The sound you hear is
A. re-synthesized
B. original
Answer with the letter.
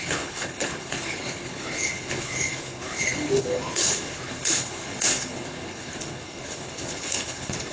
A